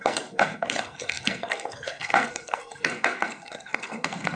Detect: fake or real fake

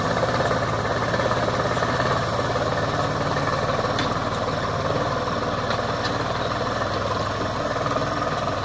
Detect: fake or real real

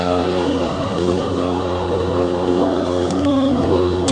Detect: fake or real fake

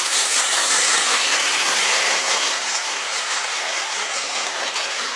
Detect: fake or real fake